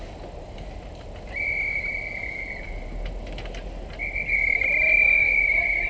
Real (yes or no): yes